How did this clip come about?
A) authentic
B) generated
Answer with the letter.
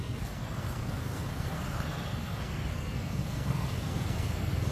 B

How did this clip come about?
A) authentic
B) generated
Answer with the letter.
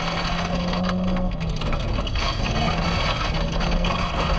B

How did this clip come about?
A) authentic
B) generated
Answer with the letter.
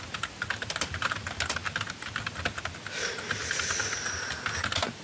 A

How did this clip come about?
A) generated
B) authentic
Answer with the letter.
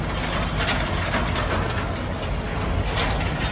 B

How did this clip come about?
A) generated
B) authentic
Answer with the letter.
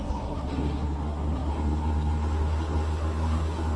A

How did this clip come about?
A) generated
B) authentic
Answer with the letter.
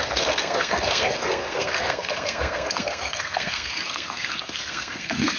A